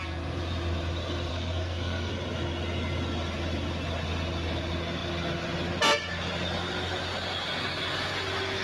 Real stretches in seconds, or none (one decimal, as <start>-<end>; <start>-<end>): 0.0-1.3; 2.1-8.6